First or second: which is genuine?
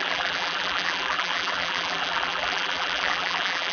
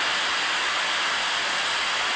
second